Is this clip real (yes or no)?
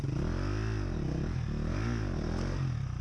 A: yes